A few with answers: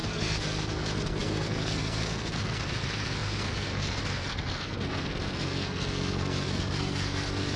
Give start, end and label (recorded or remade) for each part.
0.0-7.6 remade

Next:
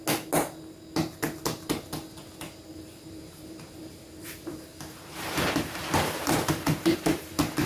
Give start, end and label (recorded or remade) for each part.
0.0-2.7 recorded; 2.7-7.3 remade; 7.3-7.7 recorded